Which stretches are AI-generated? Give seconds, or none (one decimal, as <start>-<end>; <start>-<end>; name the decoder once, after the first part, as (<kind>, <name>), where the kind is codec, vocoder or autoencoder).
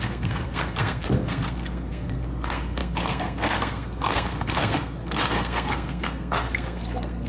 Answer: 0.0-7.3 (codec, SNAC)